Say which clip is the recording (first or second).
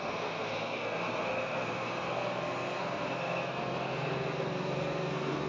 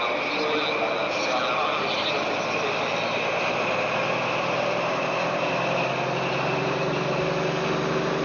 second